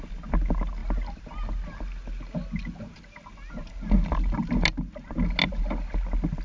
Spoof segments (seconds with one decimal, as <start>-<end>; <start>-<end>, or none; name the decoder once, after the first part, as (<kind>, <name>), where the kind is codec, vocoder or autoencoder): none